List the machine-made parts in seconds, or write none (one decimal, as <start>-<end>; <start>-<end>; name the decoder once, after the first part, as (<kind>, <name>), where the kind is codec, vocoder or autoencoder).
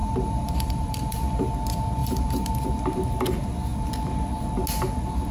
0.0-1.3 (vocoder, BigVGAN v2); 2.0-2.5